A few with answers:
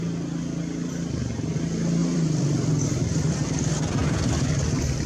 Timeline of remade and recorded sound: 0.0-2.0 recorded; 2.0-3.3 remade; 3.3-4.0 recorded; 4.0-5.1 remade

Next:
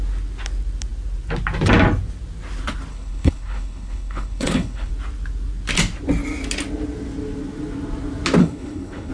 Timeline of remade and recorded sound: 0.0-2.9 recorded; 2.9-4.9 remade; 4.9-8.4 recorded; 8.4-9.1 remade